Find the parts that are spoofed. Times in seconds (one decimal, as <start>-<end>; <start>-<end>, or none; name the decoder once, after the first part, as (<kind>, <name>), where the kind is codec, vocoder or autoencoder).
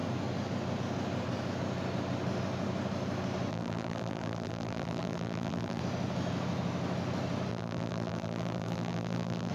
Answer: 3.5-5.8 (vocoder, BigVGAN v2); 7.5-9.5